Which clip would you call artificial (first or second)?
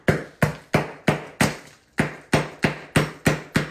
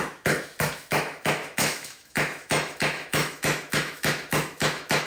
second